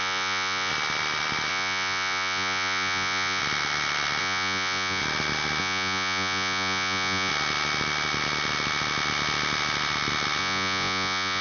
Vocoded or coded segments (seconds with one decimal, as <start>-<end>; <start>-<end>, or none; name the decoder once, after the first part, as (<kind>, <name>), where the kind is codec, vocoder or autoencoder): 0.0-0.7 (vocoder, Vocos); 1.5-3.4; 4.2-5.0; 5.6-7.3; 10.4-11.4